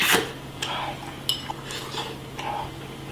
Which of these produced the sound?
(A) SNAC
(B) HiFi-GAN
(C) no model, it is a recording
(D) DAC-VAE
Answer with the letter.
C